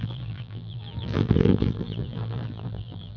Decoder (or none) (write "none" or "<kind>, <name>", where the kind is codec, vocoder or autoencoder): vocoder, BigVGAN v2